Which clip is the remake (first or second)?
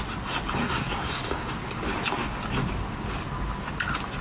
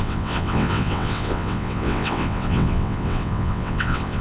second